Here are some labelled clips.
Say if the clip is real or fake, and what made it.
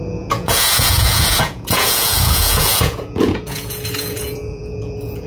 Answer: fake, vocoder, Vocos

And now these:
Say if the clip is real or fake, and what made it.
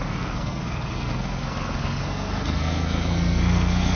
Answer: fake, codec, SNAC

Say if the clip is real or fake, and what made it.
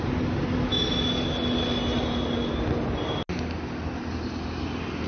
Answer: real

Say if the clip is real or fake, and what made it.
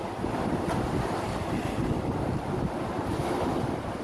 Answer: real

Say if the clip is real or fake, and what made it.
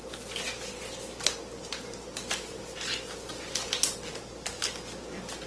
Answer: real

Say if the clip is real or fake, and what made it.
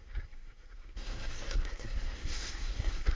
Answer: fake, codec, SNAC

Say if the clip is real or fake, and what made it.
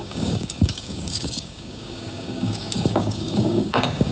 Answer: fake, codec, DAC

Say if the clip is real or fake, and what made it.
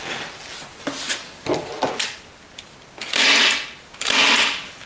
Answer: real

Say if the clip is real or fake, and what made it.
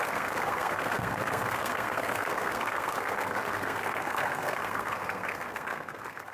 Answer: fake, codec, SNAC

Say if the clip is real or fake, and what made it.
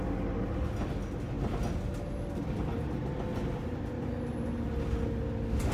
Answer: real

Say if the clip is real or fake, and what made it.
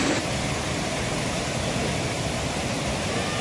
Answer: real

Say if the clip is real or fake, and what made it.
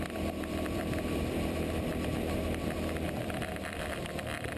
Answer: fake, vocoder, BigVGAN v2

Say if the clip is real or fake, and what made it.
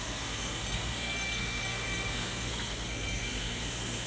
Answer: fake, codec, SNAC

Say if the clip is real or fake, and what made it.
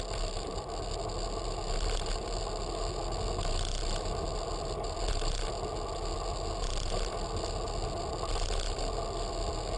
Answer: real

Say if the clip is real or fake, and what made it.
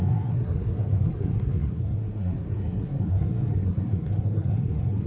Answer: fake, codec, SNAC